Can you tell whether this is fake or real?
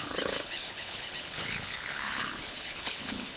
fake